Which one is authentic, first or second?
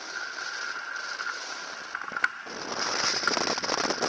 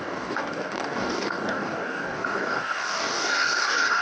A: first